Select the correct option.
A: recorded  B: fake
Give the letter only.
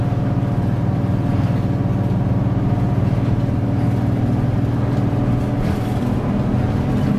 A